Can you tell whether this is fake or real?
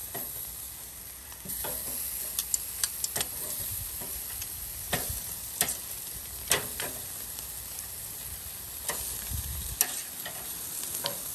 real